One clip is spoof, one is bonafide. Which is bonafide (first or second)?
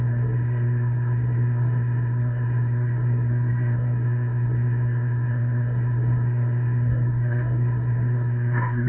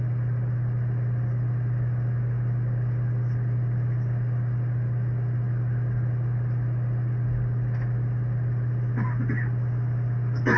second